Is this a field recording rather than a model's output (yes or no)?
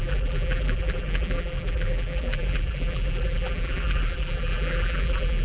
no